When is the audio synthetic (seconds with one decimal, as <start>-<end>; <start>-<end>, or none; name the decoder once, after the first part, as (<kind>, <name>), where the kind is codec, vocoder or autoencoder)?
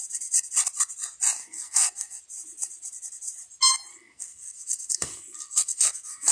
1.4-2.2 (codec, SNAC); 3.9-6.3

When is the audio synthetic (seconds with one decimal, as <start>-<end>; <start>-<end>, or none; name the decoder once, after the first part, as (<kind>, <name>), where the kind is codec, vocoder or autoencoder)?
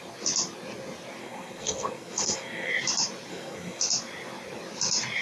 1.2-2.7 (codec, SNAC); 3.3-3.8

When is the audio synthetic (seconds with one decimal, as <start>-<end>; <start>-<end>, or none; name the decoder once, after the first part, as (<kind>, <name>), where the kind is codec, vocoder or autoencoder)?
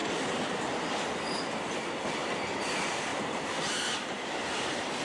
3.1-3.9 (vocoder, BigVGAN v2)